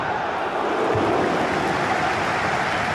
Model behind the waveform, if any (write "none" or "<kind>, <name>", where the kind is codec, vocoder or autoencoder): none